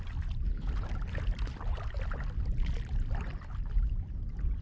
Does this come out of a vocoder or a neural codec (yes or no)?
no